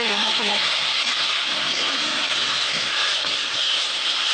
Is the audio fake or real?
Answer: fake